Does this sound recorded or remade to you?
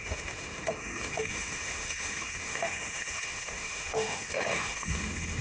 remade